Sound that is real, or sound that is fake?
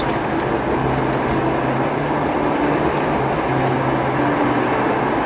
real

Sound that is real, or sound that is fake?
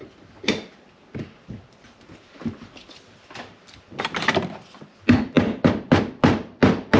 real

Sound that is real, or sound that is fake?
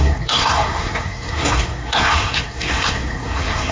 fake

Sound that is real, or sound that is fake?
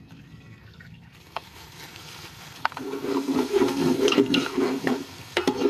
fake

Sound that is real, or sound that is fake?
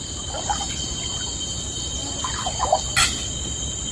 real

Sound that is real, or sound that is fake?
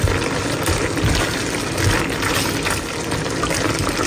real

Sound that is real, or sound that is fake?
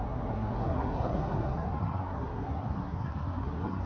fake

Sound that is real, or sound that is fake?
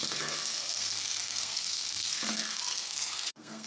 fake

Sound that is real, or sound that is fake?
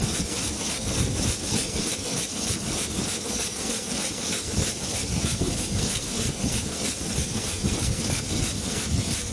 fake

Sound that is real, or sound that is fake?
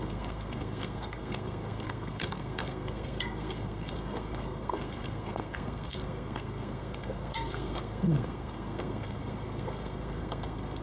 fake